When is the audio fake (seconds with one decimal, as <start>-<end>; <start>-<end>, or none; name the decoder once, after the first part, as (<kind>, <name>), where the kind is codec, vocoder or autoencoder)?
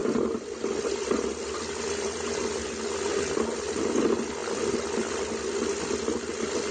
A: none